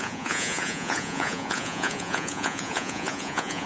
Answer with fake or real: fake